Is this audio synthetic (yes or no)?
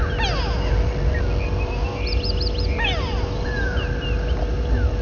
no